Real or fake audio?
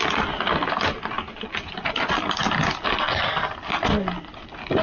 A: real